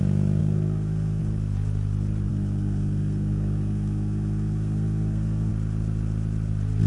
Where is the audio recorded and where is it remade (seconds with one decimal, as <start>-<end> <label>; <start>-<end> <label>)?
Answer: 0.0-0.4 recorded; 0.4-1.2 remade; 1.2-2.3 recorded; 2.3-5.5 remade; 5.5-6.9 recorded